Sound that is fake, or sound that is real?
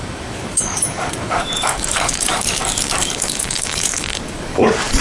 fake